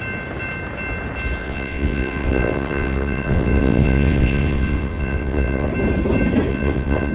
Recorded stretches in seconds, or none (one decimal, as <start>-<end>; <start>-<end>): 0.0-1.4; 5.7-6.5